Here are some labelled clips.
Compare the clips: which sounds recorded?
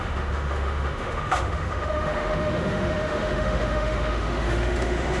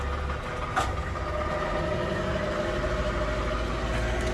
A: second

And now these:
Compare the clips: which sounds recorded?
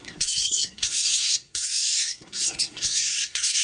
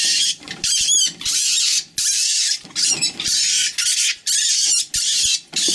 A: second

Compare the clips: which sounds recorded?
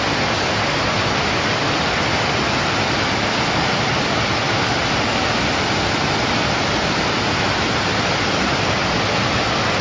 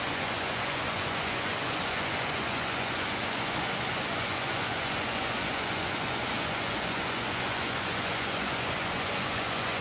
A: first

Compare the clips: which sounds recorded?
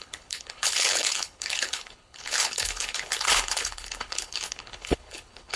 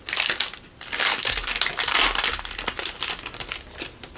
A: second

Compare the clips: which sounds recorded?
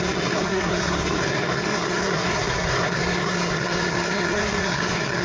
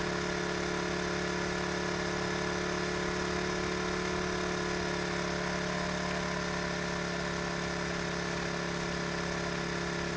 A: second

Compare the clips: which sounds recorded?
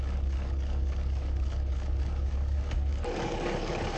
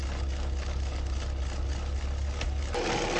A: second